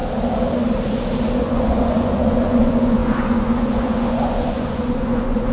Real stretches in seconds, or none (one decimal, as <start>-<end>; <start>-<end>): 0.0-1.4